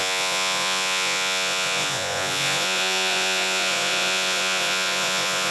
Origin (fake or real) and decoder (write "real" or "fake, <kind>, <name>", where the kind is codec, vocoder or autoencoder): fake, vocoder, Vocos